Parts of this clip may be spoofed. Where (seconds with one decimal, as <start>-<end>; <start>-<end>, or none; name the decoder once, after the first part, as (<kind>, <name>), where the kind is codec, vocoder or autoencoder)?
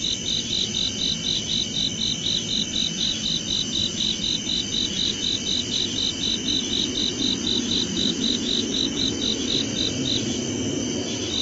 7.9-9.2 (autoencoder, DAC-VAE)